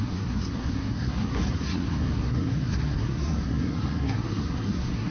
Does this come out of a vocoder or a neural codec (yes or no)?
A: yes